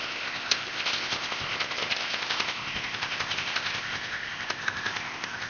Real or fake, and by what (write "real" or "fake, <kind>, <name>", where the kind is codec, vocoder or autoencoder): fake, codec, ZipCodec